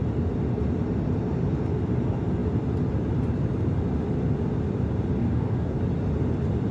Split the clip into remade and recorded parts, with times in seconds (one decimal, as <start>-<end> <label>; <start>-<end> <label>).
0.0-5.2 recorded; 5.2-5.8 remade; 5.8-6.7 recorded